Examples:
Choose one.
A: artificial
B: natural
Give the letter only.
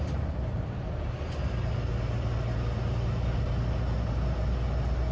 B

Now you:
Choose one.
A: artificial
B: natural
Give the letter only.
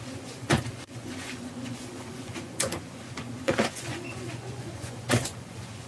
A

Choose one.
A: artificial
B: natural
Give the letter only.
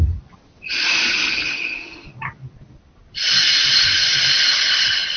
B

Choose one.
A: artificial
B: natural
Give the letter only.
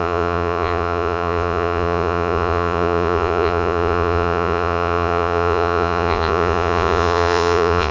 A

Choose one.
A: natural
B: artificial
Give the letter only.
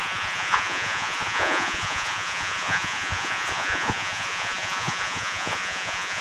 B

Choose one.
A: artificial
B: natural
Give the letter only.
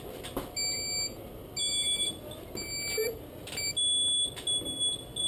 B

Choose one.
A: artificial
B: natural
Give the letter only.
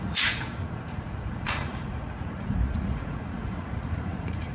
A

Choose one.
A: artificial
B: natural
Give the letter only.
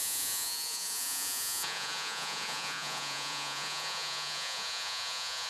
A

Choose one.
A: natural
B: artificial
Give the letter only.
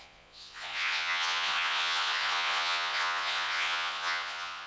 B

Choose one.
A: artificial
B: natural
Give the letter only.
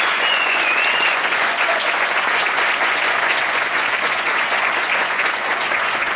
A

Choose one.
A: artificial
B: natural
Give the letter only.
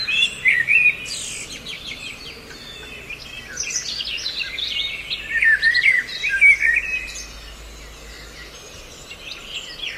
B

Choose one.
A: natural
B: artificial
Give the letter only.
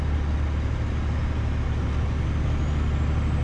A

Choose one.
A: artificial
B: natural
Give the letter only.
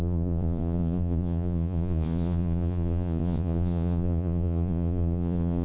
A